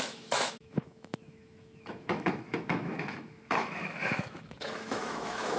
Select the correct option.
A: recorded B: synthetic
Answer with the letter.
B